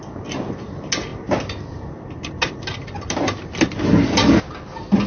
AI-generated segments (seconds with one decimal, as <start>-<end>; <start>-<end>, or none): none